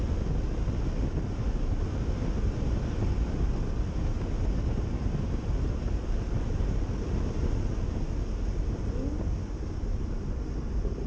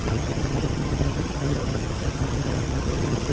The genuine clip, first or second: first